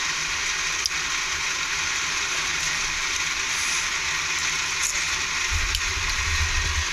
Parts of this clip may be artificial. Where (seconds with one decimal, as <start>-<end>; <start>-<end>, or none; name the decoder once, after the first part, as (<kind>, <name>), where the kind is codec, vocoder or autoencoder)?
1.7-3.0 (vocoder, BigVGAN v2)